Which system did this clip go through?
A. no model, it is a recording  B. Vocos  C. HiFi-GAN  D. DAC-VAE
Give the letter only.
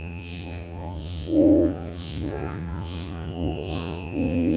B